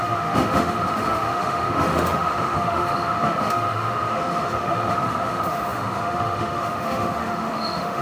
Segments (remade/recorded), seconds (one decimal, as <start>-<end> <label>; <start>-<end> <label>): 0.0-8.0 remade